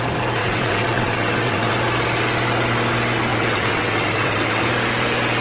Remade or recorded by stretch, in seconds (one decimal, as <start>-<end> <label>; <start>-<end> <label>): 0.0-0.4 recorded; 0.4-1.7 remade; 1.7-3.3 recorded; 3.3-4.6 remade; 4.6-5.4 recorded